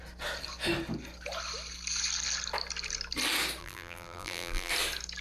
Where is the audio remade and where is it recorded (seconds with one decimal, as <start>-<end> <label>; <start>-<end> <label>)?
0.0-3.6 recorded; 3.6-4.7 remade; 4.7-5.2 recorded